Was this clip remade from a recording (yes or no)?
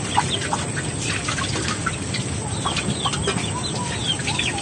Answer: no